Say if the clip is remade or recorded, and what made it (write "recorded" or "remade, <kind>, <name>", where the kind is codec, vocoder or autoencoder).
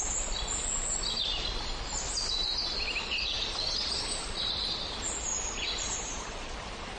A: recorded